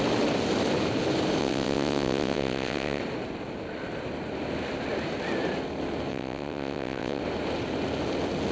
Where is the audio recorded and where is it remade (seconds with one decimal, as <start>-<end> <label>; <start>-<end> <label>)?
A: 0.0-1.4 recorded; 1.4-3.0 remade; 3.0-6.1 recorded; 6.1-7.2 remade; 7.2-8.5 recorded